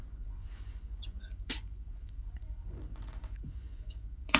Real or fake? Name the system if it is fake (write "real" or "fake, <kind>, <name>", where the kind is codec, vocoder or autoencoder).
fake, vocoder, Vocos